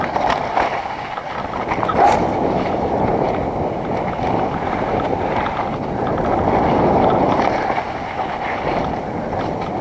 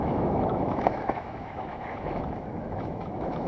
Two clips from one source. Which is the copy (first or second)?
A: second